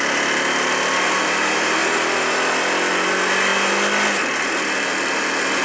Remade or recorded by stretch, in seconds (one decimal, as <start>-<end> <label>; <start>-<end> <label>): 0.0-5.6 recorded